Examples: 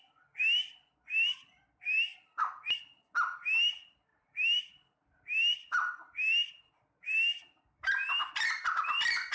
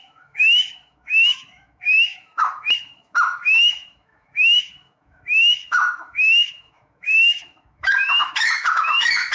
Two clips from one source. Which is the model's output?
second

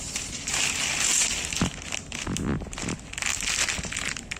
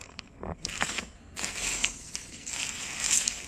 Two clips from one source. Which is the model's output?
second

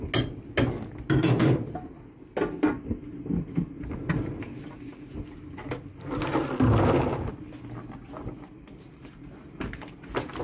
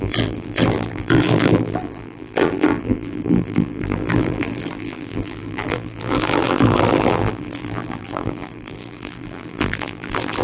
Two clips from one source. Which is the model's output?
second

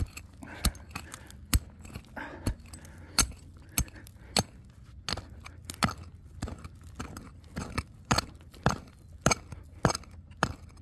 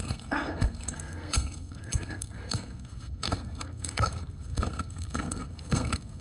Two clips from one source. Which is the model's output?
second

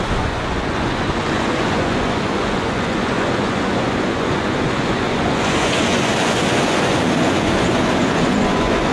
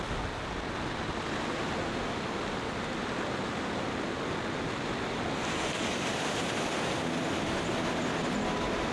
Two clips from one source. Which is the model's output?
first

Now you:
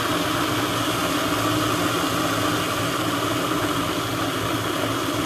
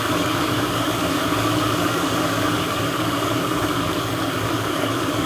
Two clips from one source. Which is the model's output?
second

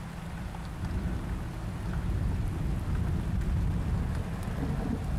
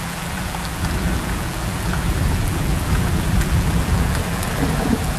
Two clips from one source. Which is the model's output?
second